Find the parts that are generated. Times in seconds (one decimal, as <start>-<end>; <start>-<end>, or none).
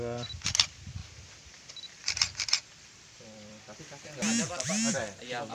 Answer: 1.0-3.8